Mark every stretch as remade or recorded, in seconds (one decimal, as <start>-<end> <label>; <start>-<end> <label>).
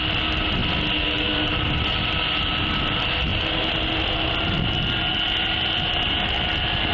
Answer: 0.0-6.9 recorded